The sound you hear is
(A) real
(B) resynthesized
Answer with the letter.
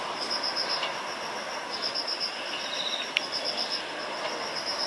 A